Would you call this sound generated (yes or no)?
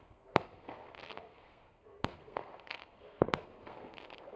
yes